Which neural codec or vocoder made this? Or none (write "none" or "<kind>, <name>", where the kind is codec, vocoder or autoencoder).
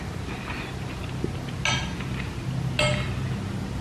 none